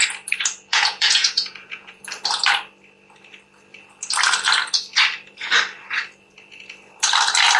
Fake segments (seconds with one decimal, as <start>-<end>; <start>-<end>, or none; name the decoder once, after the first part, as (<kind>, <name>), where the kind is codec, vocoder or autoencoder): 0.7-2.0 (vocoder, Vocos)